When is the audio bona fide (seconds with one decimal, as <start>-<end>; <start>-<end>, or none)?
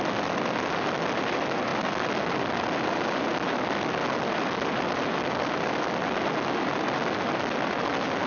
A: 0.0-8.3